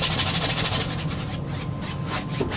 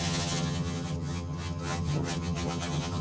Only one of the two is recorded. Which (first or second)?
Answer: first